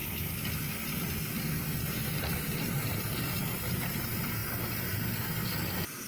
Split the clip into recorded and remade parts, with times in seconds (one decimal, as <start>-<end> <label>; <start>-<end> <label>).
0.0-6.1 recorded